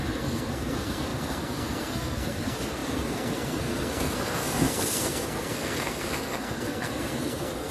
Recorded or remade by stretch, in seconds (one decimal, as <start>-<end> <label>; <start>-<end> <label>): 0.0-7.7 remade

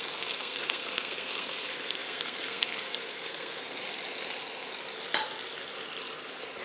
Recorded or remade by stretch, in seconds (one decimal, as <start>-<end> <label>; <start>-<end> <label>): 0.0-3.8 remade; 3.8-6.6 recorded

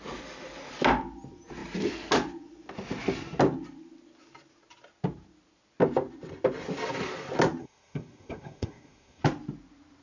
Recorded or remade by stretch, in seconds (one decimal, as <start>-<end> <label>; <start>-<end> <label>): 0.0-7.6 recorded; 7.6-9.2 remade; 9.2-10.0 recorded

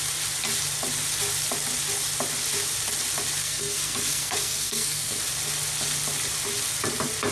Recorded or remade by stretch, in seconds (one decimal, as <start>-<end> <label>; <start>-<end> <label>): 0.0-3.4 recorded; 3.4-5.2 remade; 5.2-7.3 recorded

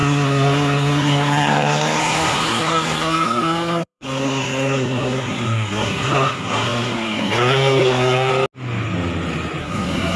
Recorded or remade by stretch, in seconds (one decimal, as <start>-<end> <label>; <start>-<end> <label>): 0.0-8.3 remade; 8.3-9.6 recorded; 9.6-10.2 remade